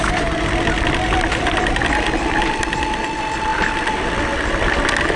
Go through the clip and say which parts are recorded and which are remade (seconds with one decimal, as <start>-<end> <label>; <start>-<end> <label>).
0.0-3.0 remade; 3.0-3.5 recorded; 3.5-4.2 remade; 4.2-5.2 recorded

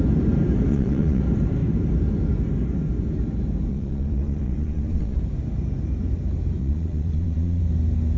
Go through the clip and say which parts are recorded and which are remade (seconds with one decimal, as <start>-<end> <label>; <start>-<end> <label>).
0.0-0.7 recorded; 0.7-1.2 remade; 1.2-3.7 recorded; 3.7-5.2 remade; 5.2-6.6 recorded; 6.6-7.6 remade; 7.6-8.2 recorded

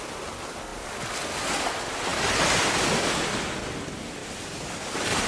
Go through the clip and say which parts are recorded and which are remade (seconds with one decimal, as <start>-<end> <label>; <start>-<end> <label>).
0.0-5.3 recorded

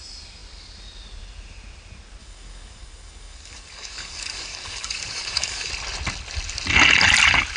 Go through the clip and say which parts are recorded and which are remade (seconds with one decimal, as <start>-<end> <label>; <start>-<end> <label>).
0.0-2.2 recorded; 2.2-5.7 remade; 5.7-7.6 recorded